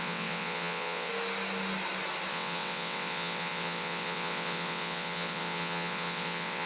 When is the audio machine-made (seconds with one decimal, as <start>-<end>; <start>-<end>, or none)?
0.0-1.1; 2.3-6.7